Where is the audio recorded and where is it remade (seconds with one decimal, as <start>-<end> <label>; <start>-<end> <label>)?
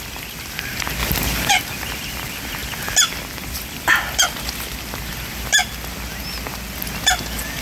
0.0-7.6 recorded